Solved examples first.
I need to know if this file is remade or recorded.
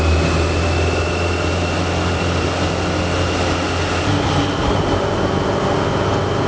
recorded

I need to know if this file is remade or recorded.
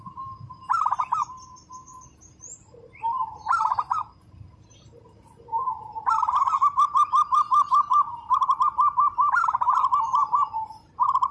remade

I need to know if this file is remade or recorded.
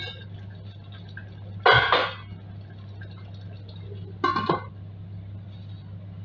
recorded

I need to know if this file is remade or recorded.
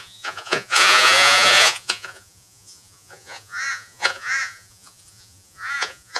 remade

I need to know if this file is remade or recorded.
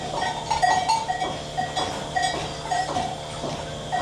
recorded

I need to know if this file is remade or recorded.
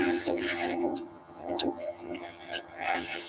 remade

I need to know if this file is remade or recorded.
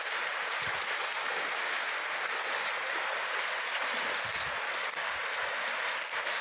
recorded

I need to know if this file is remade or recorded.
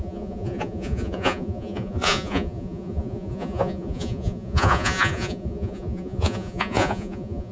remade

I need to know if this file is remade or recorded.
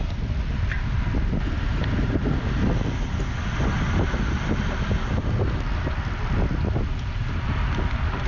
recorded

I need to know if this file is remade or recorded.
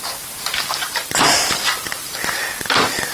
remade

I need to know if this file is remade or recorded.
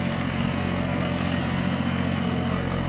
remade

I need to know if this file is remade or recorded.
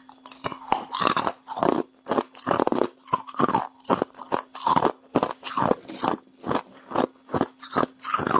recorded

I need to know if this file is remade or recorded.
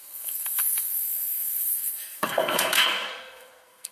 remade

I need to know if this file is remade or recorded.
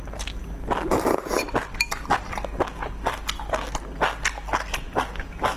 recorded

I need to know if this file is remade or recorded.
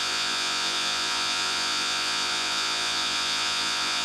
remade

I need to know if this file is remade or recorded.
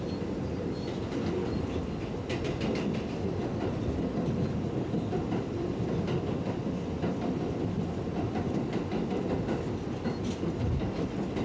recorded